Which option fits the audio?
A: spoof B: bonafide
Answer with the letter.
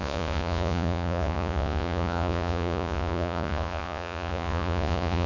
A